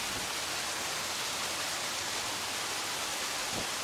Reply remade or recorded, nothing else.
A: recorded